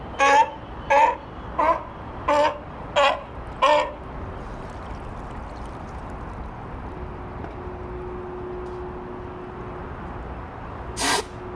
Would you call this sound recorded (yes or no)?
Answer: yes